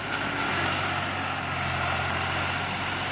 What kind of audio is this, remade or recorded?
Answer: recorded